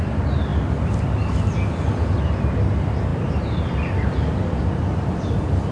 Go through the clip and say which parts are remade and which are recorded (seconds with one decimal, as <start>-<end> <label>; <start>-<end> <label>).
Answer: 0.0-5.7 recorded